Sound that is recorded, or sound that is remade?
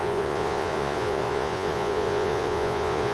remade